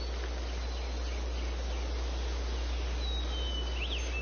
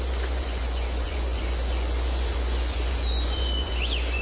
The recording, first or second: first